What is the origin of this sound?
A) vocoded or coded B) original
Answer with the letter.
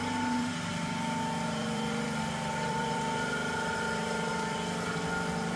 A